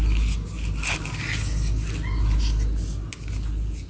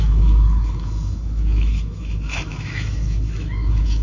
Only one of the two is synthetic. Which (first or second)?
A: second